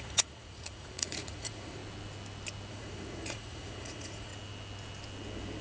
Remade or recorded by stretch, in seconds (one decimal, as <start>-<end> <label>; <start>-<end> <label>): 0.0-1.8 remade; 1.8-2.7 recorded; 2.7-4.3 remade; 4.3-5.6 recorded

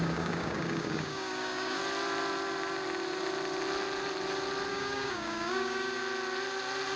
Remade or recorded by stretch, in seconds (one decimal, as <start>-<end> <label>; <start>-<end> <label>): 0.0-1.8 remade; 1.8-4.7 recorded; 4.7-6.0 remade; 6.0-7.0 recorded